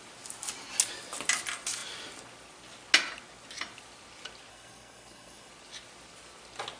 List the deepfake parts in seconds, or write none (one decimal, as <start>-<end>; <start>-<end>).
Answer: 4.5-5.5